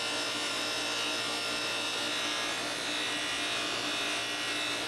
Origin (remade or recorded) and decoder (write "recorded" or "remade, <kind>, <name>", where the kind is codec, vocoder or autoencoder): recorded